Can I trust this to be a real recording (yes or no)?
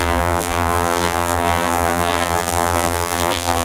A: no